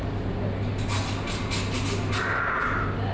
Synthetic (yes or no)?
no